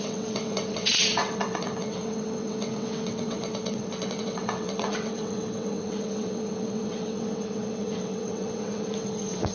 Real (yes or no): no